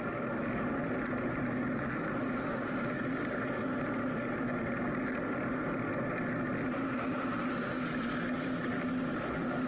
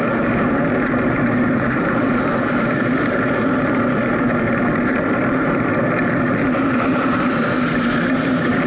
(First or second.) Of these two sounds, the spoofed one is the second